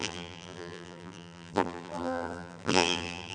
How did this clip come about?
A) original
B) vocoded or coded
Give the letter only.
B